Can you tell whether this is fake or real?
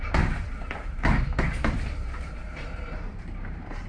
fake